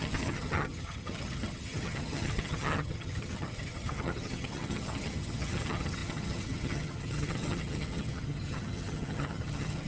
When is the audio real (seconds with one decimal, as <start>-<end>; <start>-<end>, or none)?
none